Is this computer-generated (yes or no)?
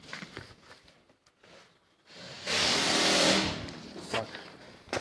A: no